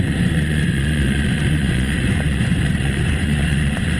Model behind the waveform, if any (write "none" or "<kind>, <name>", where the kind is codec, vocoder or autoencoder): vocoder, Vocos